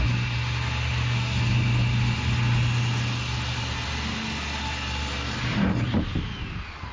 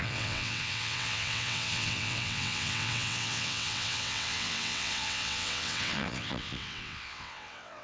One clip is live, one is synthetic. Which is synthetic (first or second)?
second